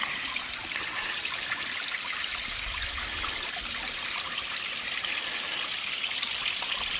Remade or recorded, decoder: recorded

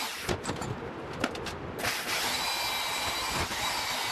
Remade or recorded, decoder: recorded